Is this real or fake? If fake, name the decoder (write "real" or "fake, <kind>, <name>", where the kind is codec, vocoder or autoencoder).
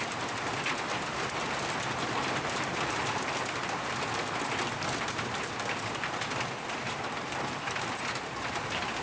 real